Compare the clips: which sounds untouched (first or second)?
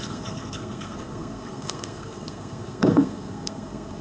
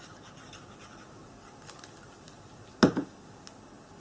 second